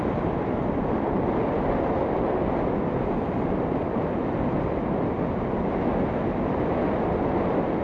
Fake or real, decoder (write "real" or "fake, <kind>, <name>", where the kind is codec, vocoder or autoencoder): real